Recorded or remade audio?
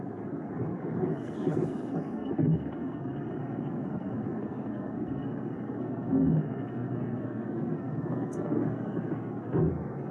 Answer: remade